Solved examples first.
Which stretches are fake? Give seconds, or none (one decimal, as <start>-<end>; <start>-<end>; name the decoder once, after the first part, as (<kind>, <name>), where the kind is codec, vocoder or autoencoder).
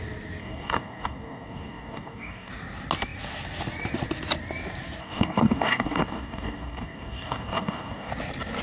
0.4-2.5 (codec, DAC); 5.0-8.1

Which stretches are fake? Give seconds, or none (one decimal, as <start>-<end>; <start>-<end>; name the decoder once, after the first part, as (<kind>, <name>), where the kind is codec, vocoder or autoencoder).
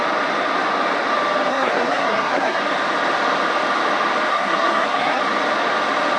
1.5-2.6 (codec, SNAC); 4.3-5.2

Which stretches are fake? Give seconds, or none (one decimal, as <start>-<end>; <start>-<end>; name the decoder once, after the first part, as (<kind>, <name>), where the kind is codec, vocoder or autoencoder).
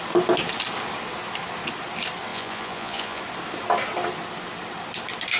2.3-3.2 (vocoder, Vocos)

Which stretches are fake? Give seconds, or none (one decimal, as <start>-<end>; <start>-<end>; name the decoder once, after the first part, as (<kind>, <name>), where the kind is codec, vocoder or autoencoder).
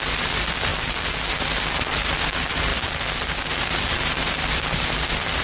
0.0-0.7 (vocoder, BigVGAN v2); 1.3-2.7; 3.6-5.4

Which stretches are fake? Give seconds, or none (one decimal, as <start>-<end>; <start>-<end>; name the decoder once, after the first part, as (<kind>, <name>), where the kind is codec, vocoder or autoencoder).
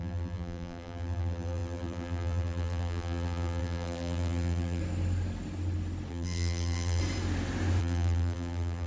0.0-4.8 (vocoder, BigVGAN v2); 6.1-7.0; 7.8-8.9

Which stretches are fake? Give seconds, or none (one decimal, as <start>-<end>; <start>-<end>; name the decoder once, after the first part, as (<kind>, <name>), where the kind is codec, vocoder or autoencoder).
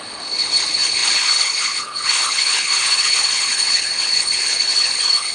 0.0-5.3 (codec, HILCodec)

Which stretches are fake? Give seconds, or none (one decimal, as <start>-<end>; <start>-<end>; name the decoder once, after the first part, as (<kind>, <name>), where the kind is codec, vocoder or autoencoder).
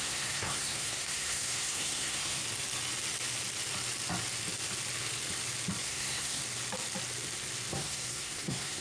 0.0-2.4 (codec, SNAC); 5.8-6.4; 7.7-8.8